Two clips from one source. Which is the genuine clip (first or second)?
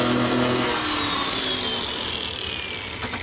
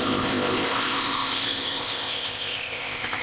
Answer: first